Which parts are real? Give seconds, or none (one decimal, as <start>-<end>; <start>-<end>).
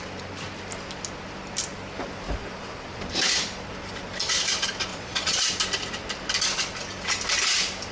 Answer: 0.0-2.4; 3.0-4.9; 5.5-7.9